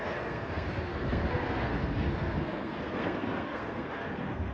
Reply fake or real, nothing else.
fake